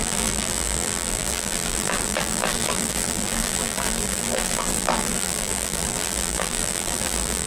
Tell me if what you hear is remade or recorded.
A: remade